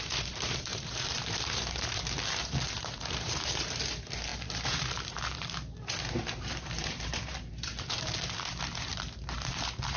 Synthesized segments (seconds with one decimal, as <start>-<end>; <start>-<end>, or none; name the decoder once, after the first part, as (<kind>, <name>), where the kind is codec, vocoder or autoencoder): 0.0-10.0 (vocoder, BigVGAN v2)